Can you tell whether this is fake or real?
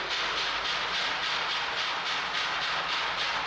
real